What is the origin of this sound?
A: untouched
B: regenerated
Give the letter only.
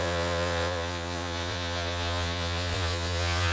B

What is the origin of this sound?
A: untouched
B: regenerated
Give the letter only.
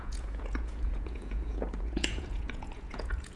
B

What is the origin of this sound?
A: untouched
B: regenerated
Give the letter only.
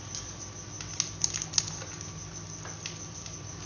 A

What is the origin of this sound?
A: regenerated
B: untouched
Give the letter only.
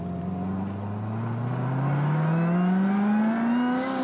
B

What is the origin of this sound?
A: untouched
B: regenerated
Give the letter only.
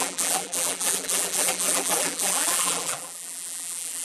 B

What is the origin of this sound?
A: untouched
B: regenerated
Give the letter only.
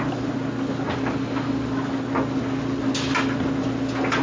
A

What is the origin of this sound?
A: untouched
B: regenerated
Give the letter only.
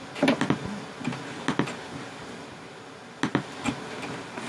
A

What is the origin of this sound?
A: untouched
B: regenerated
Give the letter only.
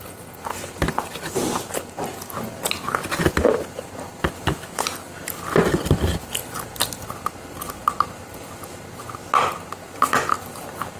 A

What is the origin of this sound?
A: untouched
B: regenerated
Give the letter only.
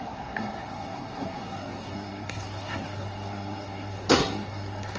B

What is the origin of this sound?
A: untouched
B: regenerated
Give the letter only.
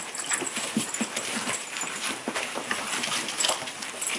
A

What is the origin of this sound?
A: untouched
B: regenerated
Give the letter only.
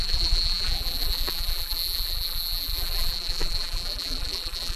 B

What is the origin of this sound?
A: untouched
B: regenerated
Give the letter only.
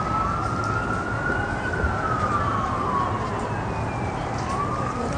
A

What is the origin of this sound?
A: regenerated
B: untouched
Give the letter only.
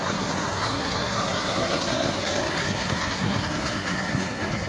A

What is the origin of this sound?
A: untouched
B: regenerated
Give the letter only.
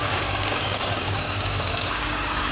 B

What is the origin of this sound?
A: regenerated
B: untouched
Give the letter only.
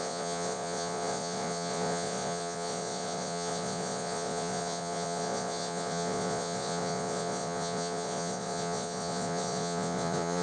A